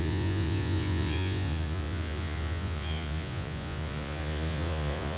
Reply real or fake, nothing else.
fake